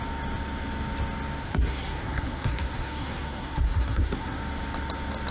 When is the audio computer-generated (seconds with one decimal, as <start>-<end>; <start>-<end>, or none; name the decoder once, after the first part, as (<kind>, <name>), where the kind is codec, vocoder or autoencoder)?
1.4-4.4 (codec, SNAC)